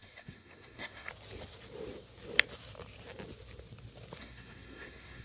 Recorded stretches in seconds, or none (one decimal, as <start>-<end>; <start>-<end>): 1.1-4.2

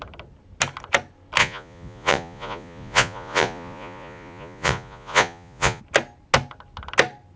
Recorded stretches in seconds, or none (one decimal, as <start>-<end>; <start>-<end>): 0.0-1.4; 5.8-7.4